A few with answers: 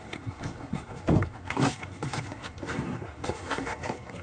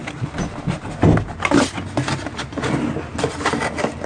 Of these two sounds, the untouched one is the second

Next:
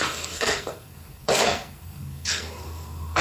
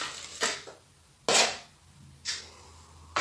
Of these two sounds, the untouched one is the second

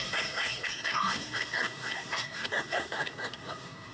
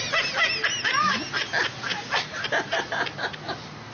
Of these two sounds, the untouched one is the second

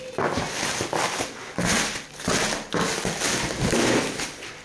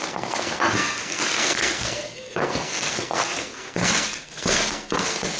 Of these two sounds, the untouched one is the first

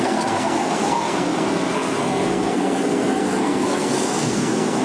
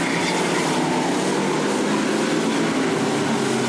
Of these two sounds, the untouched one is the second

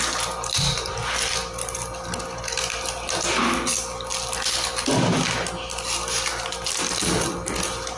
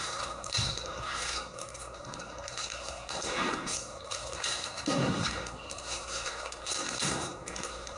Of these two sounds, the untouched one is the first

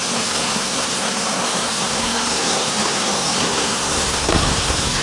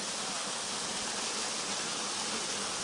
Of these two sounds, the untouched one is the second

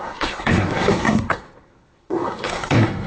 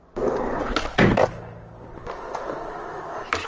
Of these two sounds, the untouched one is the second